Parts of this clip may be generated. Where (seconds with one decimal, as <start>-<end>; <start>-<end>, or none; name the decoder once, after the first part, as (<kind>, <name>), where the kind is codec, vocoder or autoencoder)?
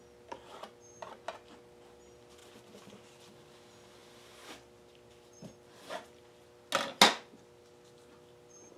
none